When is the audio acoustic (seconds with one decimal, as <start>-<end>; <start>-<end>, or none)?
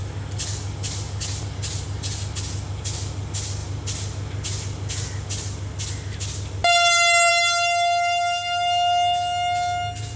0.0-10.2